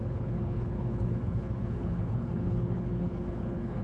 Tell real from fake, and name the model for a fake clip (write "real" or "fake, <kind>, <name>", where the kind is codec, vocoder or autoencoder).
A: fake, codec, HILCodec